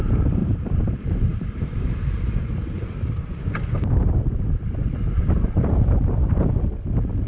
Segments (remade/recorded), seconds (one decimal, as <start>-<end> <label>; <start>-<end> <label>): 0.0-0.4 recorded; 0.4-3.9 remade; 3.9-4.8 recorded; 4.8-6.5 remade; 6.5-7.3 recorded